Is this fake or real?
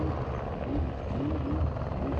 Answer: real